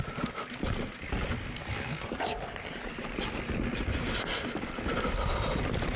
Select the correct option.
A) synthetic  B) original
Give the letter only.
A